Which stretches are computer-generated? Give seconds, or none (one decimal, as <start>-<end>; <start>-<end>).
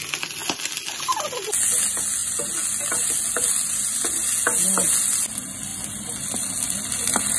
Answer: none